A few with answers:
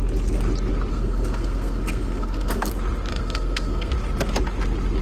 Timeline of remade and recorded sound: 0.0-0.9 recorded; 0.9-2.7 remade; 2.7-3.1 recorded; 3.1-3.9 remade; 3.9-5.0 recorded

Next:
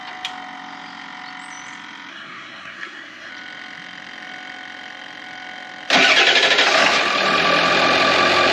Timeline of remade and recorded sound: 0.0-2.1 recorded; 2.1-3.3 remade; 3.3-8.5 recorded

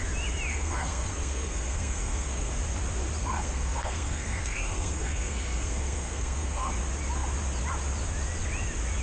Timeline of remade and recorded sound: 0.0-0.5 recorded; 0.5-2.5 remade; 2.5-3.2 recorded; 3.2-6.7 remade; 6.7-9.0 recorded

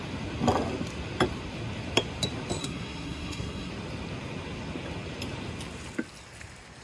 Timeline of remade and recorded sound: 0.0-2.6 recorded; 2.6-3.7 remade; 3.7-6.8 recorded

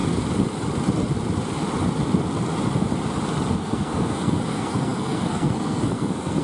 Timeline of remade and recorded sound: 0.0-3.5 recorded; 3.5-6.4 remade

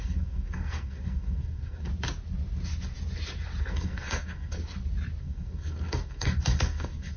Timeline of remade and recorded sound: 0.0-1.9 remade; 1.9-3.6 recorded; 3.6-4.6 remade; 4.6-5.2 recorded; 5.2-7.2 remade

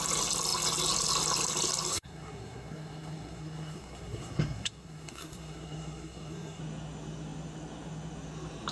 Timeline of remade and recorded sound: 0.0-1.9 recorded; 1.9-6.6 remade; 6.6-8.7 recorded

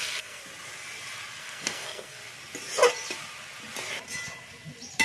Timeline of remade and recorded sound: 0.0-0.4 remade; 0.4-1.4 recorded; 1.4-2.2 remade; 2.2-5.0 recorded